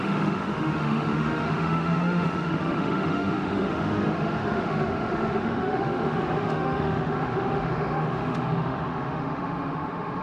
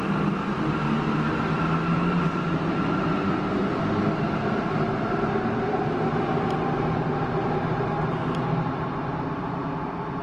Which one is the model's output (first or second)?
first